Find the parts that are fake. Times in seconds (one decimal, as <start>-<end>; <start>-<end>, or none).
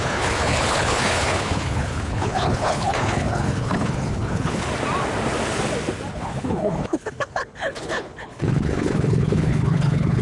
0.0-4.7; 6.1-10.2